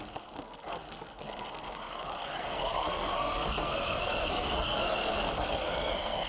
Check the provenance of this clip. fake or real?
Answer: fake